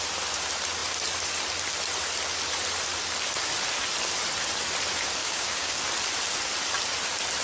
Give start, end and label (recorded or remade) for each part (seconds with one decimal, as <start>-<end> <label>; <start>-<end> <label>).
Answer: 0.0-5.2 recorded; 5.2-5.8 remade; 5.8-7.4 recorded